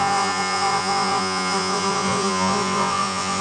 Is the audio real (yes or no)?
no